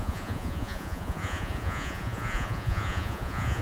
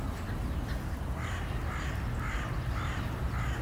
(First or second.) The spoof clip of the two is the first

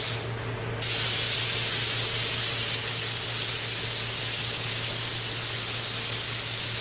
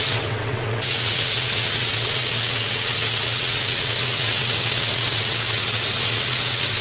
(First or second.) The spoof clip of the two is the second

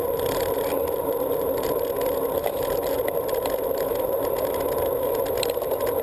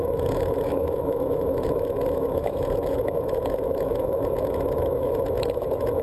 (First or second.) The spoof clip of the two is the second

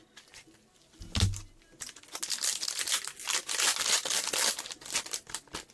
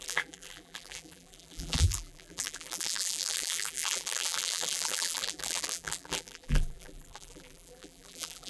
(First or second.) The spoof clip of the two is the second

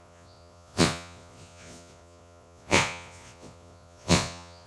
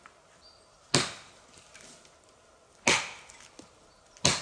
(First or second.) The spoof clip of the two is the first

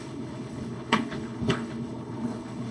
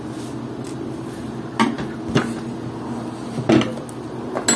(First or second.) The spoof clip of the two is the first